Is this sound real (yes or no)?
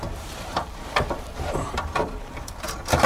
no